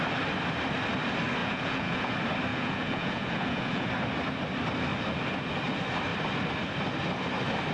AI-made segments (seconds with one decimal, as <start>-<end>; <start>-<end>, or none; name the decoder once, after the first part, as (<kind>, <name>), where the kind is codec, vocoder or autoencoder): 1.4-2.1 (vocoder, Vocos); 2.5-3.9